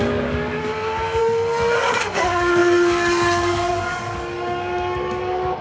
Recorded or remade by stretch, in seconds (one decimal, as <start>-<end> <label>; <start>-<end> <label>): 0.0-0.7 remade; 0.7-1.2 recorded; 1.2-5.6 remade